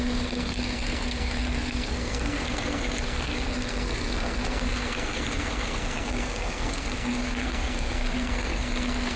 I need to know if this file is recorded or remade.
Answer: remade